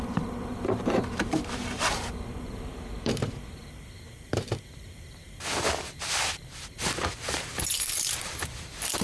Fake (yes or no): yes